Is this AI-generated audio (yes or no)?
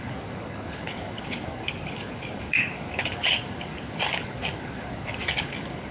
yes